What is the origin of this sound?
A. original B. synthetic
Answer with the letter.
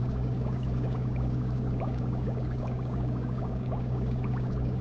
B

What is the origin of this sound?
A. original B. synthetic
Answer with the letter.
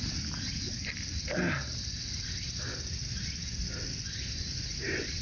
A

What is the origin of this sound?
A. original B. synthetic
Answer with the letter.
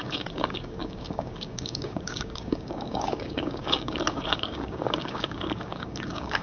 B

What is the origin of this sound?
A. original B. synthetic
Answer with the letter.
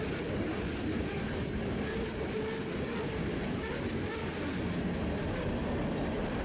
A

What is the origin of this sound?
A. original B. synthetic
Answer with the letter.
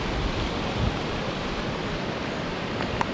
A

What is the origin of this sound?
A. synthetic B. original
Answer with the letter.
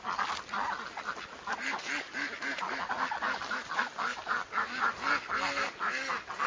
B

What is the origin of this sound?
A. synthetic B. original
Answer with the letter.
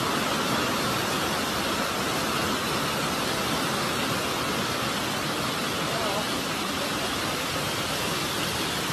B